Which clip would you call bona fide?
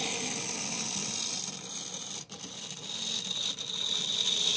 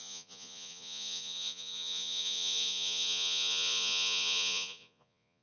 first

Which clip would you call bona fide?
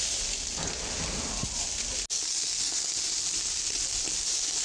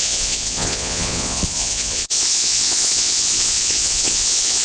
first